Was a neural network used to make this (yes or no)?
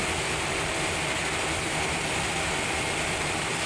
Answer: no